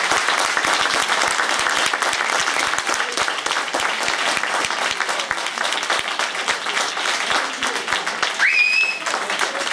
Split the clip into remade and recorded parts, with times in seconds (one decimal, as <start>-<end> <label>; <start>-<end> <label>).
0.0-2.4 recorded; 2.4-6.6 remade; 6.6-9.7 recorded